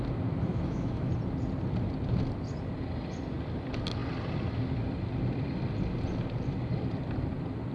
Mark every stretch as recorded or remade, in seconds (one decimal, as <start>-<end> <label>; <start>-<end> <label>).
0.0-0.5 recorded; 0.5-1.1 remade; 1.1-7.7 recorded